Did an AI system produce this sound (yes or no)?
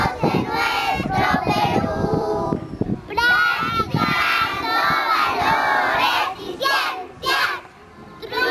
yes